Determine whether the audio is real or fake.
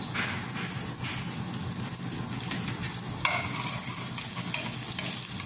real